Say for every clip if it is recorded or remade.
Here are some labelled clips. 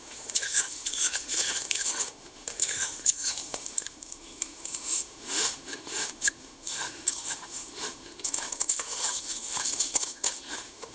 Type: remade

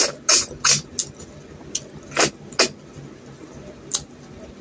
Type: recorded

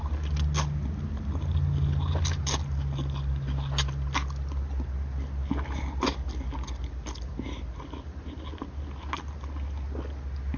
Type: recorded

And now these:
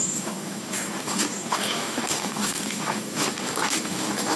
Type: remade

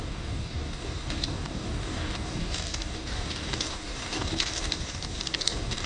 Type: remade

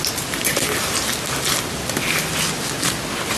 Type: recorded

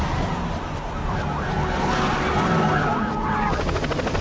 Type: recorded